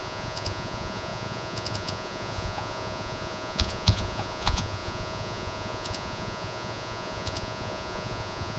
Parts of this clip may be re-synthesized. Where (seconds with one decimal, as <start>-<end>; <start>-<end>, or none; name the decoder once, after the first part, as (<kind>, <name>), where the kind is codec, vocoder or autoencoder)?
0.0-8.6 (vocoder, Vocos)